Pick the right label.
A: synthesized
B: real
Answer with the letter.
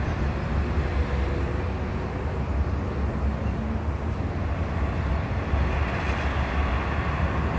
B